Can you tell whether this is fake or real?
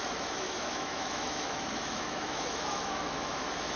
fake